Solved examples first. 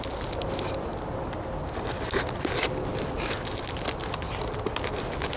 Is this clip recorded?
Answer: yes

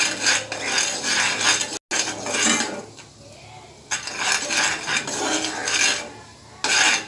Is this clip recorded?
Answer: yes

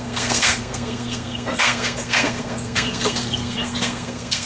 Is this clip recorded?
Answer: no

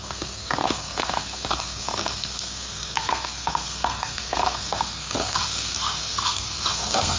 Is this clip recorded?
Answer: no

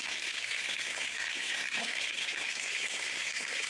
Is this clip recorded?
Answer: no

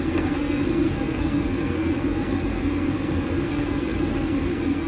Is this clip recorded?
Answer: no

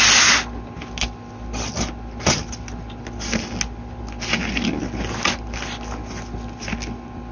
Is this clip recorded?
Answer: yes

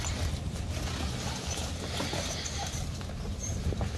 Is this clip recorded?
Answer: yes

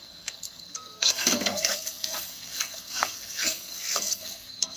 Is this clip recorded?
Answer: no